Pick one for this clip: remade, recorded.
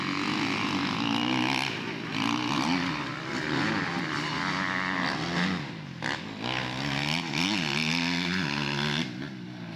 recorded